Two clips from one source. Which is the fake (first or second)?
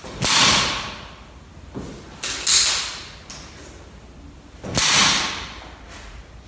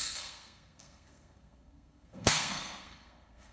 second